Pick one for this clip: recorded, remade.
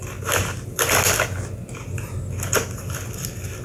recorded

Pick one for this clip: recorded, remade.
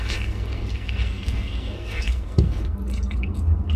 remade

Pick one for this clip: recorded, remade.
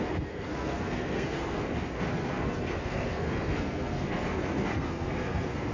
remade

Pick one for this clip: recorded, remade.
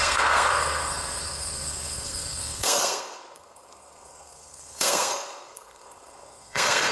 remade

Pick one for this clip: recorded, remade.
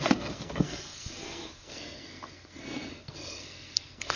remade